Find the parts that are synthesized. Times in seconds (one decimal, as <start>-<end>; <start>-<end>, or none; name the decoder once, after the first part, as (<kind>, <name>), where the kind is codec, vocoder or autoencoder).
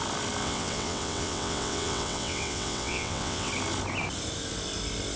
0.4-3.5 (vocoder, WaveNeXt)